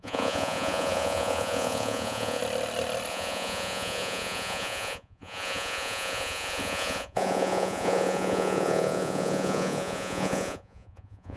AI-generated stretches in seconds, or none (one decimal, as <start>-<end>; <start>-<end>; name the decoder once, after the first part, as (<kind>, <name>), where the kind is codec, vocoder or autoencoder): 0.0-2.4 (vocoder, Vocos); 3.1-11.4